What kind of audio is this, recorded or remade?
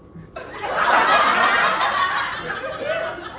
recorded